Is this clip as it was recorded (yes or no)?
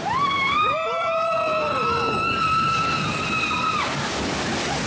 yes